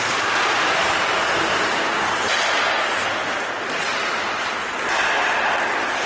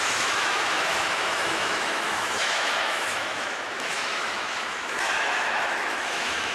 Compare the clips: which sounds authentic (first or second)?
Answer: first